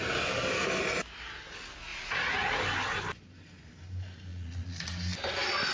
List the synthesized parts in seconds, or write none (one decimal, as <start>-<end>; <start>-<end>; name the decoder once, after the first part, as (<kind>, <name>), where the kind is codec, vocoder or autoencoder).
1.9-2.6 (vocoder, Vocos); 4.3-4.9